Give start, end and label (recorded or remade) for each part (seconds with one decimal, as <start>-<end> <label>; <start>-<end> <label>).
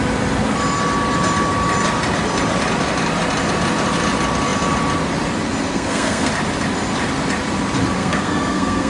0.0-5.7 recorded; 5.7-6.3 remade; 6.3-8.0 recorded; 8.0-8.9 remade